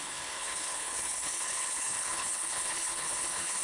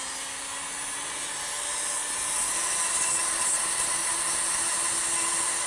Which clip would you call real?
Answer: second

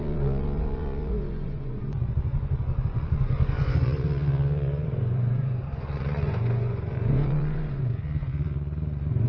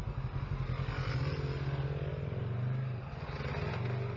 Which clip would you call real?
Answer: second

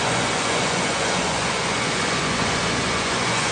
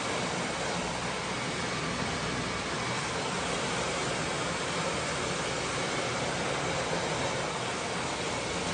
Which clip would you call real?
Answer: second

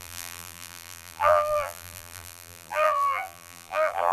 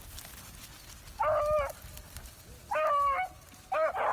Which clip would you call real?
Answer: second